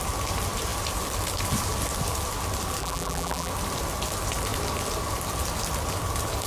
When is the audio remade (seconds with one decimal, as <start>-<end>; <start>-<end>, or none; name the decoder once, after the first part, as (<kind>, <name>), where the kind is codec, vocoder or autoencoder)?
2.8-3.5 (vocoder, BigVGAN v2)